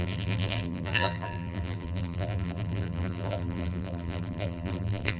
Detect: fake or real fake